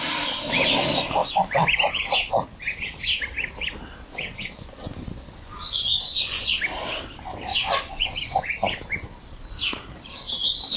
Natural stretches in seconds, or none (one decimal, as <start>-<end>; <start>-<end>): 0.0-4.1; 6.6-7.5; 8.5-10.8